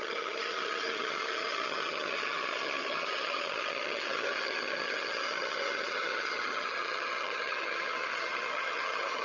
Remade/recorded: remade